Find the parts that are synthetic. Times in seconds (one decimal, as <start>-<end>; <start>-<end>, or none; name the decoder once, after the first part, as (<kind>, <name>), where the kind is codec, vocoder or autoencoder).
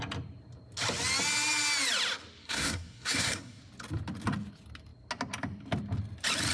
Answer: 2.4-3.6 (codec, SNAC)